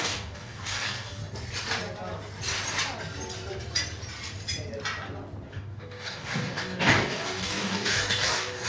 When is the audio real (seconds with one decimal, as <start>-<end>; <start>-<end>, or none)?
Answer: 1.2-5.5